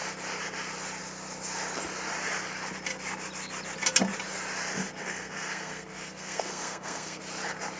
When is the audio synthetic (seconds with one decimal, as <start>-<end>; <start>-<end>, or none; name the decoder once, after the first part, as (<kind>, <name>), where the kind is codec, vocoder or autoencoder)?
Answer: 5.0-7.2 (codec, SNAC)